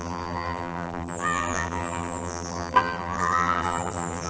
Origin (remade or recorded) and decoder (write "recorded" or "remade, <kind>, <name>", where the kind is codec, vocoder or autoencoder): remade, vocoder, BigVGAN v2